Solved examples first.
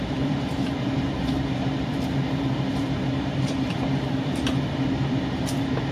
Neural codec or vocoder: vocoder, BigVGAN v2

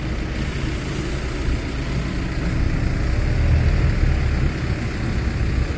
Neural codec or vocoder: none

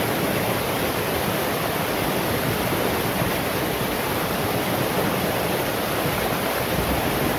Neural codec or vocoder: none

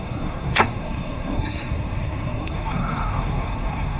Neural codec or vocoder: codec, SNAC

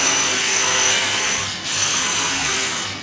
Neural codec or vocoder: codec, SNAC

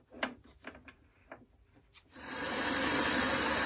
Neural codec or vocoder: vocoder, BigVGAN v2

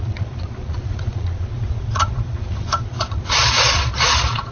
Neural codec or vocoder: vocoder, Vocos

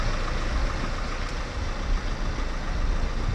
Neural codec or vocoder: none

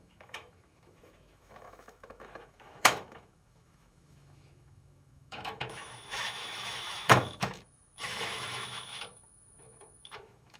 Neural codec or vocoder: autoencoder, DAC-VAE